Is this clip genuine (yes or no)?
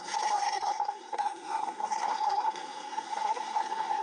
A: no